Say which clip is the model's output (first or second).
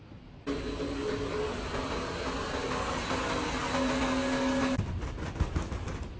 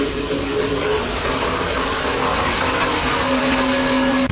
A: second